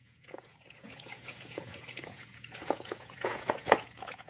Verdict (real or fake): fake